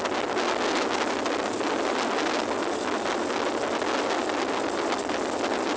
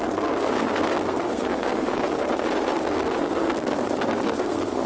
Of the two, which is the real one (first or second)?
first